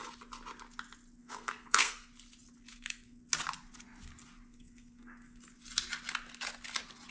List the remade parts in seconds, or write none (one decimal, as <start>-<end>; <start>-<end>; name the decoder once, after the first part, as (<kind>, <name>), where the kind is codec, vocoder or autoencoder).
1.2-2.1 (codec, SNAC); 2.7-3.2; 4.5-5.4